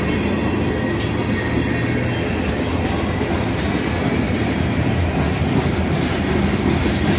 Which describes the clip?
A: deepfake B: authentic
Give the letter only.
B